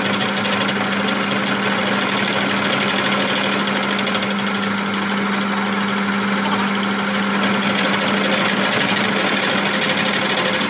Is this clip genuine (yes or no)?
yes